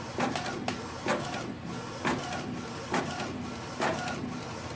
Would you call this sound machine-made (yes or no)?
no